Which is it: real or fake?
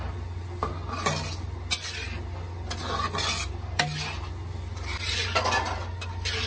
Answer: real